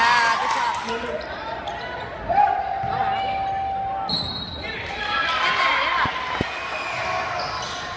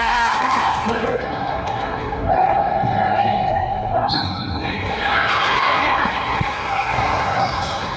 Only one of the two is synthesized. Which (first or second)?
second